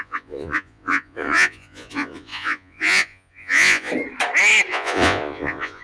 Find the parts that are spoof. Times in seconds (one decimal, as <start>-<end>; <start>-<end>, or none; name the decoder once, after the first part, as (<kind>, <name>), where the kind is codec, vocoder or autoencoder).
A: 0.0-3.9 (vocoder, Vocos); 4.7-5.8